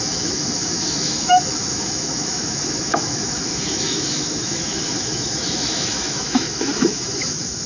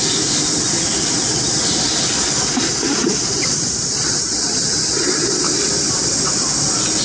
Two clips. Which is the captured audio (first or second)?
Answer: second